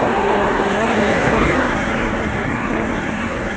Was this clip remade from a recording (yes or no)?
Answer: yes